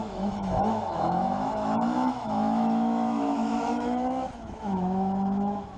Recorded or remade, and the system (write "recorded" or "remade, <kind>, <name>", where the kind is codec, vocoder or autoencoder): remade, autoencoder, DAC-VAE